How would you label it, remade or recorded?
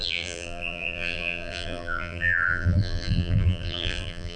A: remade